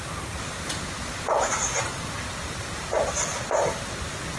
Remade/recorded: recorded